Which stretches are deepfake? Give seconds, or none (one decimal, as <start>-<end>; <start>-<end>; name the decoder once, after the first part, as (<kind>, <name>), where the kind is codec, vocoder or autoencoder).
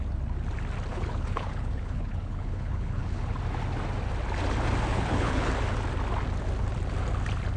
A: 0.9-3.3 (codec, HILCodec); 4.9-5.5